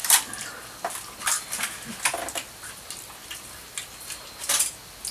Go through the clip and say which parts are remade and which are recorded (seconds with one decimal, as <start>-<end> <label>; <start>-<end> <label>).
0.0-5.1 recorded